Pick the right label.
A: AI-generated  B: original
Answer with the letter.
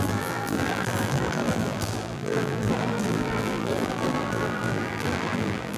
A